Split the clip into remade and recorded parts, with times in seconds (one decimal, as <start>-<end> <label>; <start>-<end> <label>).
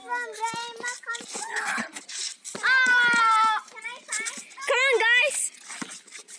0.0-1.5 recorded; 1.5-2.0 remade; 2.0-6.4 recorded